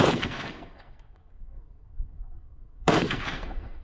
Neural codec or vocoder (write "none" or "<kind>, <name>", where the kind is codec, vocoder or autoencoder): codec, SNAC